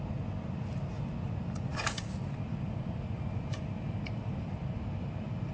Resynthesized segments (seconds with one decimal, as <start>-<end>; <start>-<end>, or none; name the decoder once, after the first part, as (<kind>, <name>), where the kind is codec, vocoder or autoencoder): 1.7-4.6 (vocoder, BigVGAN v2)